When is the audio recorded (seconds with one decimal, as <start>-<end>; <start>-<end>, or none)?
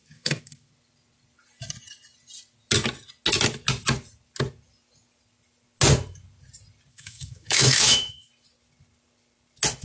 0.7-6.9; 8.3-9.8